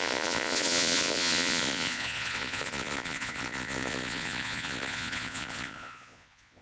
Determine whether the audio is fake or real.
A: fake